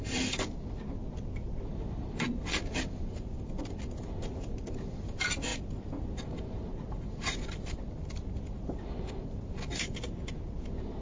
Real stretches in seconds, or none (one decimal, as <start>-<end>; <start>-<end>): 0.0-1.0; 3.5-11.0